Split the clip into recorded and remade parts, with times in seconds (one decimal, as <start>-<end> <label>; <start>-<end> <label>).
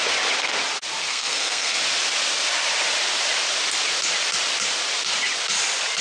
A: 0.0-1.1 recorded; 1.1-1.8 remade; 1.8-6.0 recorded